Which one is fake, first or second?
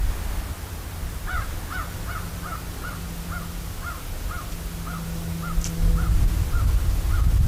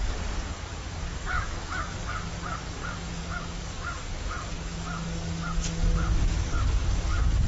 second